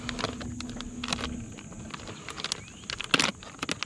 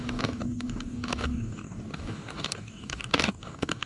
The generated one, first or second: second